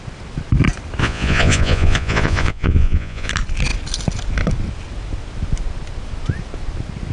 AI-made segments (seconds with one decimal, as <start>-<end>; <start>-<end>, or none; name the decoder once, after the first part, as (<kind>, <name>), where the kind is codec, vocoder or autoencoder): 1.0-3.3 (vocoder, Vocos)